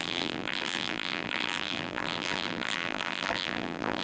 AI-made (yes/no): yes